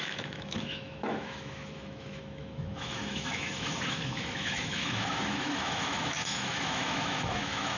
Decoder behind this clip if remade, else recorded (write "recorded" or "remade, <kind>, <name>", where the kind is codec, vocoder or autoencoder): remade, autoencoder, DAC-VAE